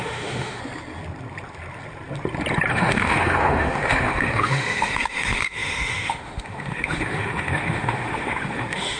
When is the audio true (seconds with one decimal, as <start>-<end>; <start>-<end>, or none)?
0.6-2.7